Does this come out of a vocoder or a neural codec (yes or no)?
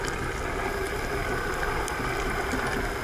no